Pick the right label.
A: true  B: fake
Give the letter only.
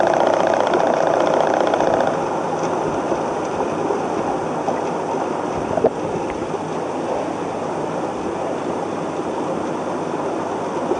A